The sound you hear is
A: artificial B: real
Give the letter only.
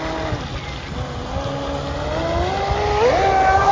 B